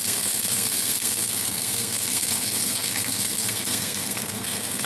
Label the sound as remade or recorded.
remade